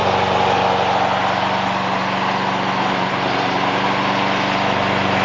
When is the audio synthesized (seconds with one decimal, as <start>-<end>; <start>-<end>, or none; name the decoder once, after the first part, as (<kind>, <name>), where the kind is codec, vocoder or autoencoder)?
none